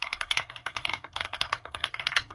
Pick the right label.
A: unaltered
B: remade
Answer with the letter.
B